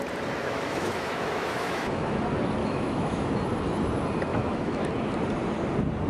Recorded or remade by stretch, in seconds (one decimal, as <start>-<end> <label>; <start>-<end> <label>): 0.0-0.4 recorded; 0.4-2.2 remade; 2.2-2.6 recorded; 2.6-3.3 remade; 3.3-4.3 recorded; 4.3-4.9 remade; 4.9-6.1 recorded